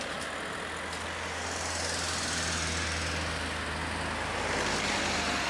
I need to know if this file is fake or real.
real